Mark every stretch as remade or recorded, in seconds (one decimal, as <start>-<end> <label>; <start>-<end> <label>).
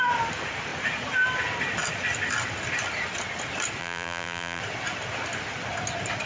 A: 0.0-3.8 recorded; 3.8-4.6 remade; 4.6-6.3 recorded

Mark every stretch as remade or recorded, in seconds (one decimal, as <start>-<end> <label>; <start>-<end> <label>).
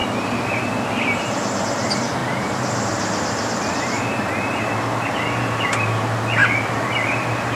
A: 0.0-2.2 recorded; 2.2-4.2 remade; 4.2-6.4 recorded; 6.4-7.6 remade